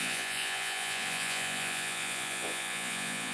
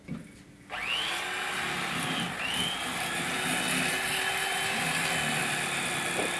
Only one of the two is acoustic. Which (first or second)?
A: second